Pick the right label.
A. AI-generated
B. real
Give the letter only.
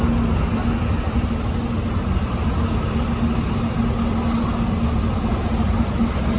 B